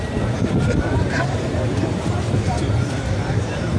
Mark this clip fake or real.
fake